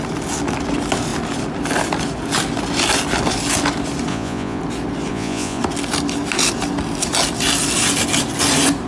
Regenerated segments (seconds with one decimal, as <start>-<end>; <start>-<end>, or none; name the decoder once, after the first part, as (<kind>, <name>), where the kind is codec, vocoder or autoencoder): 4.1-4.6 (vocoder, Vocos); 5.1-5.6